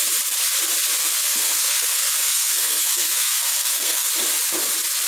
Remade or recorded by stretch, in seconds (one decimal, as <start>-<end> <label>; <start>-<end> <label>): 0.0-1.0 recorded; 1.0-4.1 remade; 4.1-5.1 recorded